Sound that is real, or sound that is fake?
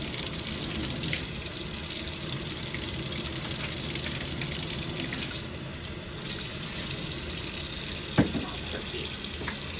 real